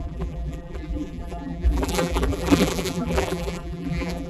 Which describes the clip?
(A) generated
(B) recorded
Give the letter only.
A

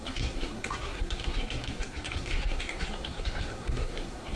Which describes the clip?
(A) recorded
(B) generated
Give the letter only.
B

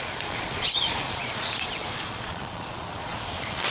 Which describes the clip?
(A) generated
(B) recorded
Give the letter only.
A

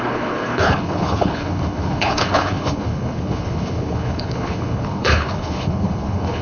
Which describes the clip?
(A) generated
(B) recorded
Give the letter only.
A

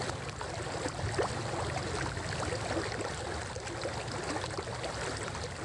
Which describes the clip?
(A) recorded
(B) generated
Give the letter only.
A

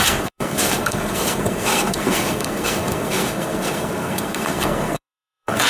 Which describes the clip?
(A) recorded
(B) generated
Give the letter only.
B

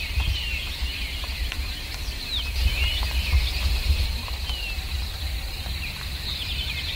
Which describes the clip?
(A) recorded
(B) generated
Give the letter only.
A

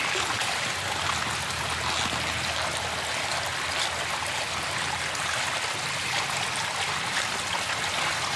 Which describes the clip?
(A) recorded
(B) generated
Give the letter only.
A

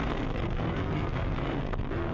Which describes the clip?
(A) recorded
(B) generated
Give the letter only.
B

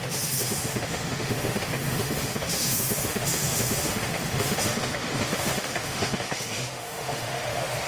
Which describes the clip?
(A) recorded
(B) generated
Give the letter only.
B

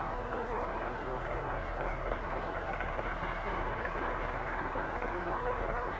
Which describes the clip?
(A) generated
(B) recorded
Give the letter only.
A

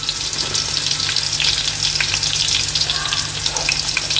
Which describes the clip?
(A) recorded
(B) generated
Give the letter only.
A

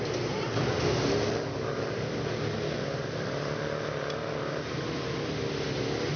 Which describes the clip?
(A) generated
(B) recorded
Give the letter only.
B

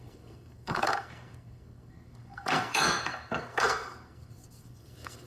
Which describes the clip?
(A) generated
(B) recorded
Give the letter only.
A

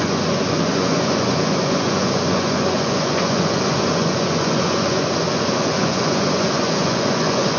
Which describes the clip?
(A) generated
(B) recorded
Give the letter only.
A